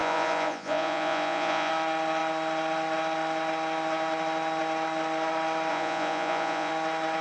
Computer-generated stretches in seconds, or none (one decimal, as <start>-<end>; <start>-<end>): 0.0-1.7; 5.7-6.7